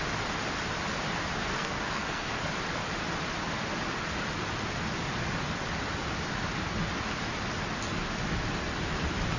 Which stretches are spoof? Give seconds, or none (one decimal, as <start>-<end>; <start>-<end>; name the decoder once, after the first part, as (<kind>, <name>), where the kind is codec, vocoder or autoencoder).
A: 1.5-2.3 (codec, SNAC)

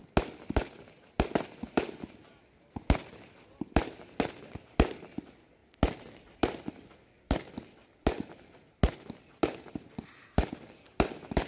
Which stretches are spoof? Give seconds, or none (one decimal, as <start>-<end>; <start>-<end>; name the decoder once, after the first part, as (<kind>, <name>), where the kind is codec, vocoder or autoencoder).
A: none

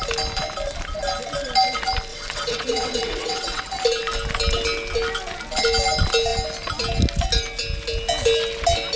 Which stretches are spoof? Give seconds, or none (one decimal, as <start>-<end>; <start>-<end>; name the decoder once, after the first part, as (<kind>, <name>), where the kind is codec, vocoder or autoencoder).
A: 2.1-3.6 (vocoder, WaveNeXt)

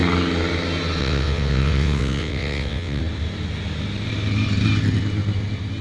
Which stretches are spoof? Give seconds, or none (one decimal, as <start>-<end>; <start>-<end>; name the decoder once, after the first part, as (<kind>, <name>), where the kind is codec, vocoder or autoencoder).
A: 1.0-3.0 (vocoder, WaveNeXt)

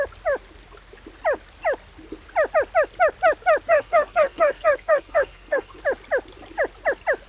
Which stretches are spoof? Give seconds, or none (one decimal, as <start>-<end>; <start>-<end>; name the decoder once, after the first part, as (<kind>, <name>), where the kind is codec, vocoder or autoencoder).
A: 3.7-5.8 (codec, SNAC)

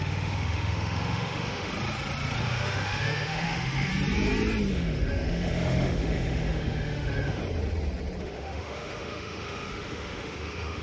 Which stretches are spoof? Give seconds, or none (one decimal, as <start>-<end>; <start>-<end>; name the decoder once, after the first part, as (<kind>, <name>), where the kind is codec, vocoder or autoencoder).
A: 0.0-1.7 (autoencoder, DAC-VAE); 2.4-3.9; 4.7-7.4; 8.2-10.8